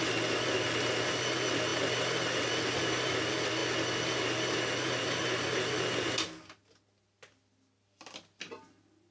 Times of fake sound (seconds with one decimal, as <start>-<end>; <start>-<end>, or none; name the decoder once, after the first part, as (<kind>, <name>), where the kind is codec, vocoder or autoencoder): none